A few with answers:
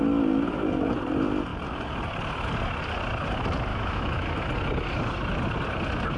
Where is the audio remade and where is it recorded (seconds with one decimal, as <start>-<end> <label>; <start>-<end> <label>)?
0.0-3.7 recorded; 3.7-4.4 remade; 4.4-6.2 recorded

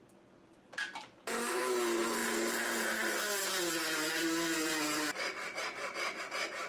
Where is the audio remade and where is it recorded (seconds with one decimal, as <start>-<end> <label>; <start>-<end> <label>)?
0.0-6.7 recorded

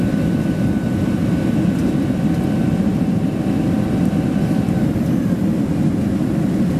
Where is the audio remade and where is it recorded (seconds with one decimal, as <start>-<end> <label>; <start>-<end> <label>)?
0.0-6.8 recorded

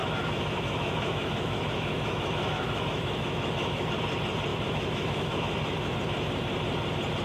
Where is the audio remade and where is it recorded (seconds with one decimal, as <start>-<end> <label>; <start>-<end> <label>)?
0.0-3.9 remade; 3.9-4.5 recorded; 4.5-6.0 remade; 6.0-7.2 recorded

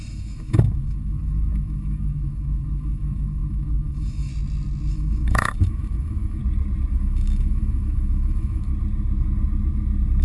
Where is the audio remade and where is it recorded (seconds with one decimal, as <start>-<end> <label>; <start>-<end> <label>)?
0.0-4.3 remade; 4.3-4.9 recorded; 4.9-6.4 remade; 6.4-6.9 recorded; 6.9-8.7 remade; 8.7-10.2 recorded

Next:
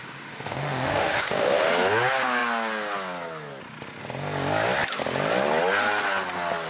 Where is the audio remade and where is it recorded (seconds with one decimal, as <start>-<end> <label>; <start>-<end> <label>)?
0.0-1.7 remade; 1.7-6.7 recorded